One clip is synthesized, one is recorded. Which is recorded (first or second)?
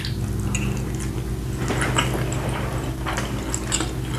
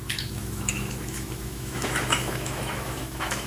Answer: first